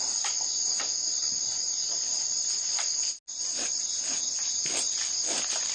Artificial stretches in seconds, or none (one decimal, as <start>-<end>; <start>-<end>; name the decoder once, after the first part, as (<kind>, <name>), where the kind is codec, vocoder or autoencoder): none